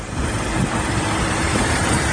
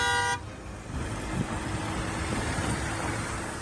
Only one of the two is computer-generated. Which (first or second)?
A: first